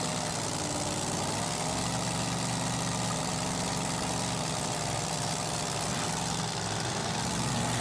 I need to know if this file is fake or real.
real